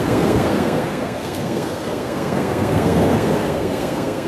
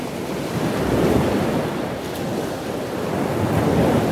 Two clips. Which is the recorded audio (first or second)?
second